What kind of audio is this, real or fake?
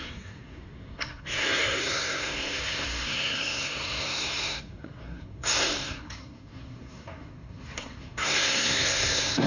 fake